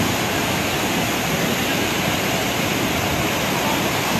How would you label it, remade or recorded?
recorded